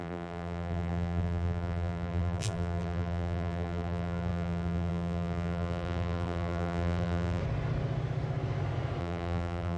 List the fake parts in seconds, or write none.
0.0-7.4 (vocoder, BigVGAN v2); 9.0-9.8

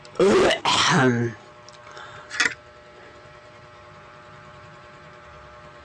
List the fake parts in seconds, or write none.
0.0-1.0 (vocoder, BigVGAN v2); 3.0-5.8

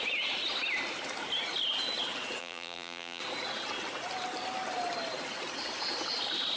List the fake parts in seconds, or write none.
2.4-3.2 (vocoder, BigVGAN v2)

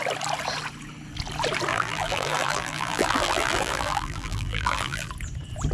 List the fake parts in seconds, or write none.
1.7-5.1 (vocoder, BigVGAN v2)

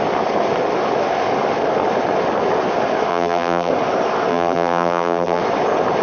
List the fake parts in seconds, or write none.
3.1-3.7 (vocoder, BigVGAN v2); 4.3-5.4

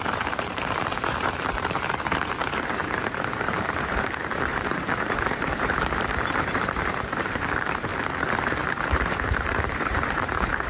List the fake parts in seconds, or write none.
0.0-7.9 (vocoder, BigVGAN v2); 8.4-10.7

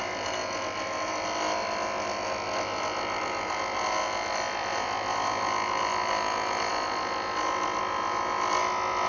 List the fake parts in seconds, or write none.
none